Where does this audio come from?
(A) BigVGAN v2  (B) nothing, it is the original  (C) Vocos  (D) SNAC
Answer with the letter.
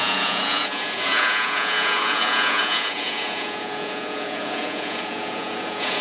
C